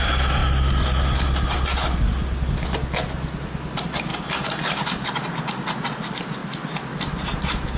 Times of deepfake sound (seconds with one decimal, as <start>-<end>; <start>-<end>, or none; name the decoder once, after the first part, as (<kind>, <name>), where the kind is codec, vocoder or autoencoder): none